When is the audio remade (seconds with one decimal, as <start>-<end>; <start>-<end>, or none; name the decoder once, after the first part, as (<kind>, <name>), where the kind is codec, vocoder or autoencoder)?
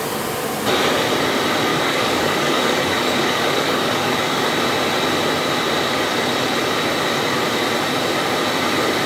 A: 1.7-4.5 (codec, DAC)